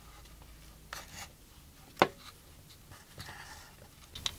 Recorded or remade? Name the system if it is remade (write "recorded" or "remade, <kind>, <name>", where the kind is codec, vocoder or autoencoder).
recorded